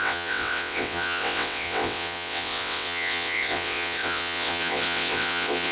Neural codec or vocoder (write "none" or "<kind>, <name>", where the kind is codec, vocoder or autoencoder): vocoder, WaveNeXt